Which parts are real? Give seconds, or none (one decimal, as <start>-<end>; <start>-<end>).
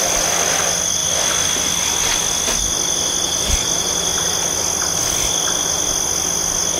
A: 0.0-6.8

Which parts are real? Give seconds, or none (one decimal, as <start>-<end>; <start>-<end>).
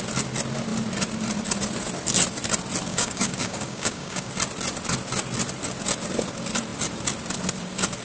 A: 0.0-2.9; 4.3-8.0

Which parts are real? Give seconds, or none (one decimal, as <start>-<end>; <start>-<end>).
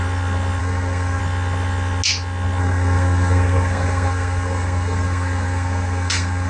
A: 0.0-0.6; 1.2-2.6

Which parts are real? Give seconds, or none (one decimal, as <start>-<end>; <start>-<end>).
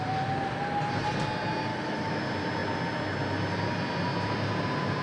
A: 0.0-1.7; 2.2-5.0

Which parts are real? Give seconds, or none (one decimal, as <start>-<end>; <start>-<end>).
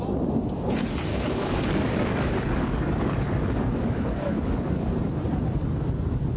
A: 0.0-1.1; 4.9-6.4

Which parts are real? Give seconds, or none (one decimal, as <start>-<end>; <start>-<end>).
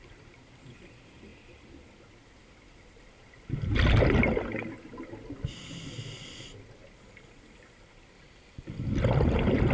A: 0.0-9.7